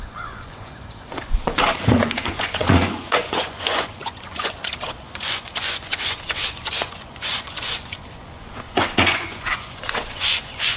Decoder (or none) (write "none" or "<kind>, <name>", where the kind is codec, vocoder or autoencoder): vocoder, Vocos